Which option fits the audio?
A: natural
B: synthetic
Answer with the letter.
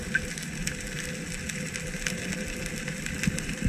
A